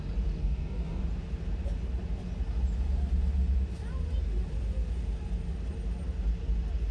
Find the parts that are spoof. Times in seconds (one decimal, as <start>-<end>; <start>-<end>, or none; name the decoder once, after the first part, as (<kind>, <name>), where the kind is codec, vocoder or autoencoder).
0.4-1.0 (codec, DAC)

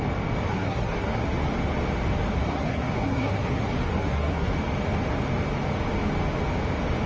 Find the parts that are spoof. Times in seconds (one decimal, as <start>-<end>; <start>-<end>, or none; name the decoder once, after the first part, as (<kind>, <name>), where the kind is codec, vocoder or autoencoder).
0.5-1.3 (codec, SNAC); 2.4-4.5